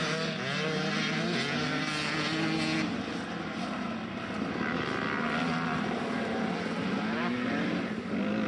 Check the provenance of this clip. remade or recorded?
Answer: recorded